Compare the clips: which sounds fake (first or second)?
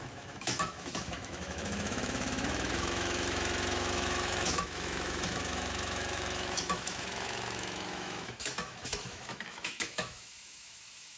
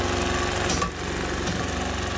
first